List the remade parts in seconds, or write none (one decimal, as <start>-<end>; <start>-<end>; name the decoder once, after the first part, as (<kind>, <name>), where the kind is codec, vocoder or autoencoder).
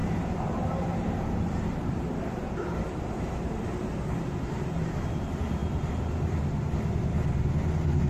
0.0-4.9 (vocoder, BigVGAN v2)